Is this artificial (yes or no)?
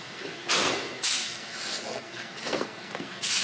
yes